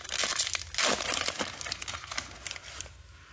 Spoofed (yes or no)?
no